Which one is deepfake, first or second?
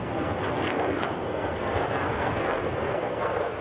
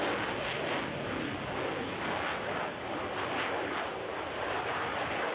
first